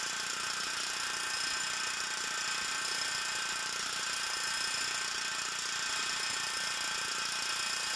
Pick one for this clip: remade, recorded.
recorded